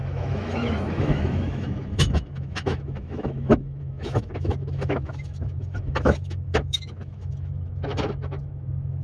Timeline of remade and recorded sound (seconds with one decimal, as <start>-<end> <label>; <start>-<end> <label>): 0.0-9.0 remade